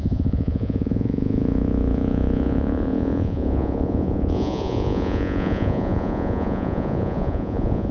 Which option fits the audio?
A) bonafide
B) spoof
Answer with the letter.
B